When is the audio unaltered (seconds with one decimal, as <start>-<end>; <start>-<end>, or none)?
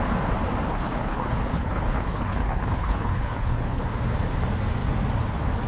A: 0.0-0.7; 3.8-5.7